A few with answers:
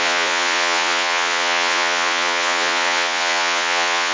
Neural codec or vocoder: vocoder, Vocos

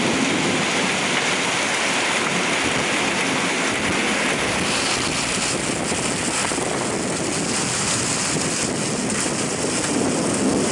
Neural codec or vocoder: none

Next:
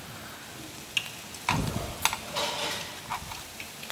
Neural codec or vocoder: none